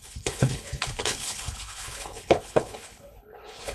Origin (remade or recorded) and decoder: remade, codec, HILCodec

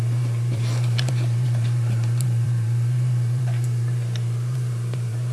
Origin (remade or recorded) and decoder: remade, vocoder, BigVGAN v2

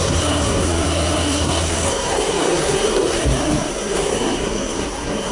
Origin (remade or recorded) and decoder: remade, codec, SNAC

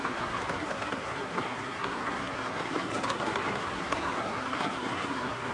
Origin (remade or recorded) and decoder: remade, codec, SNAC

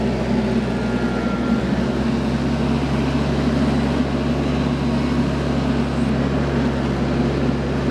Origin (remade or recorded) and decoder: recorded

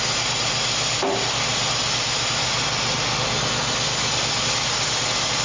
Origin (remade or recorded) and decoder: recorded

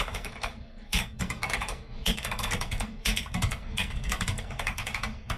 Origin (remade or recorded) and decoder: remade, codec, SNAC